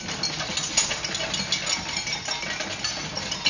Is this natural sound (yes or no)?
yes